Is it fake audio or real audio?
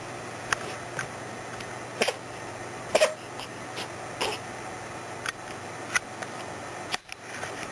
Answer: real